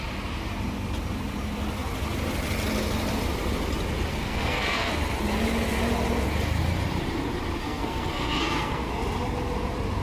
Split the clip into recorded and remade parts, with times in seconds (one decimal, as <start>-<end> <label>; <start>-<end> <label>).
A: 0.0-4.1 recorded; 4.1-4.9 remade; 4.9-7.6 recorded; 7.6-8.9 remade; 8.9-10.0 recorded